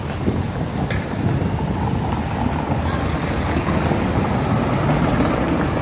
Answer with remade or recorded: recorded